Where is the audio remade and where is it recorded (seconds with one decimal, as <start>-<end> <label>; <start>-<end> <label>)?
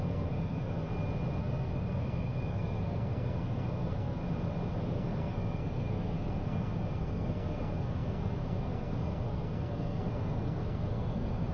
0.0-0.9 remade; 0.9-1.4 recorded; 1.4-4.2 remade; 4.2-4.8 recorded; 4.8-11.5 remade